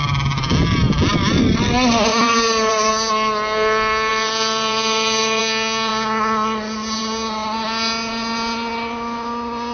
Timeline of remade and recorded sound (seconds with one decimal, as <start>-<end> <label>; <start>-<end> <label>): 0.0-2.1 recorded; 2.1-3.1 remade; 3.1-4.1 recorded; 4.1-5.4 remade; 5.4-9.7 recorded